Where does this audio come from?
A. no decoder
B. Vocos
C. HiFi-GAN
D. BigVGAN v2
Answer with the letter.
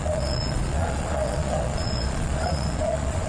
B